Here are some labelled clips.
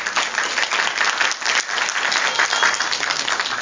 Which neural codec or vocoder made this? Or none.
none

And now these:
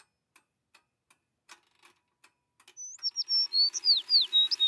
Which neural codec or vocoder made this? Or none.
none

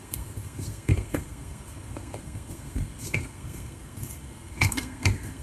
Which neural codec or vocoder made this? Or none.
codec, SNAC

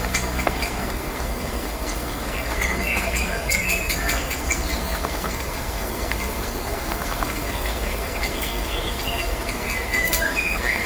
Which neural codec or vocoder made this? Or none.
codec, SNAC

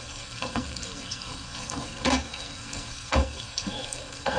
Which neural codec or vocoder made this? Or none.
codec, SNAC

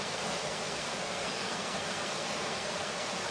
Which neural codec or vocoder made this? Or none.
codec, SNAC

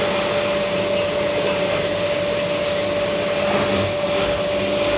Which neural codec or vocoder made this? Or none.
none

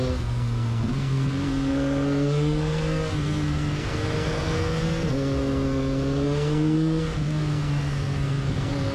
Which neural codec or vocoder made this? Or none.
codec, SNAC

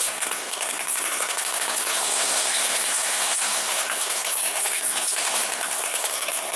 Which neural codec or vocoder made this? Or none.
codec, SNAC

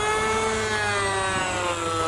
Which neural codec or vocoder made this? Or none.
none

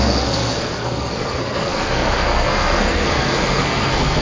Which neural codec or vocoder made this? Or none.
codec, SNAC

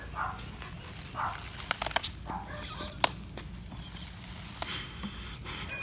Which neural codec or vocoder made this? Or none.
none